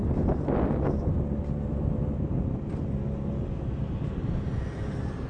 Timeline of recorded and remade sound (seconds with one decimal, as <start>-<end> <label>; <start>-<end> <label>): 0.0-5.3 recorded